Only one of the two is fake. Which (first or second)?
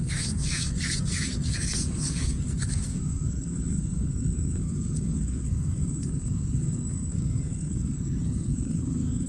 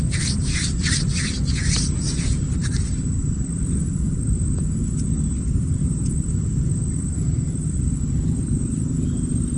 first